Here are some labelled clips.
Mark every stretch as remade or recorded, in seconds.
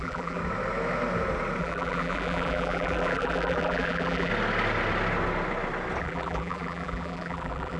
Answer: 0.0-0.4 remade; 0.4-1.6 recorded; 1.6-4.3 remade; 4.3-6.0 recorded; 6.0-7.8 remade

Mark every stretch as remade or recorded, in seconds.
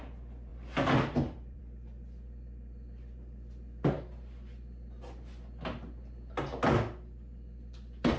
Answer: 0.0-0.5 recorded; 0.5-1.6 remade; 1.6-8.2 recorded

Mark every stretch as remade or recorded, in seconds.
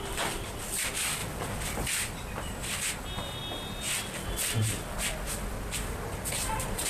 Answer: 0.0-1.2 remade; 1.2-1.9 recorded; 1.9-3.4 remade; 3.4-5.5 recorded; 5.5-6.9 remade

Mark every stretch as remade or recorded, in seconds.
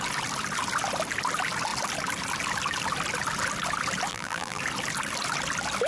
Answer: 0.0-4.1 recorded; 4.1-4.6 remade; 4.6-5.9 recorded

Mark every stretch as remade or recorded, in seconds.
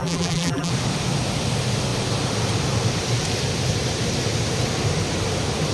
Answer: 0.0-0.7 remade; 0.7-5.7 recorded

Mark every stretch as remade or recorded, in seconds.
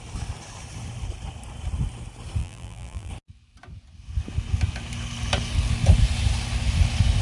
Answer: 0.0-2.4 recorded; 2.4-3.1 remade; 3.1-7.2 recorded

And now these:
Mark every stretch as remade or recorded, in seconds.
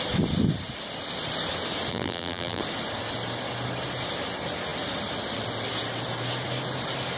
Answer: 0.0-1.9 recorded; 1.9-2.6 remade; 2.6-7.2 recorded